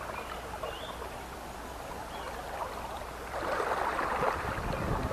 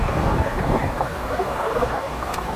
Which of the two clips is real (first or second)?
first